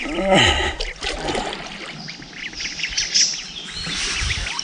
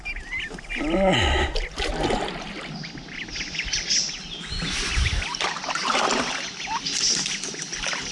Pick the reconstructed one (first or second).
first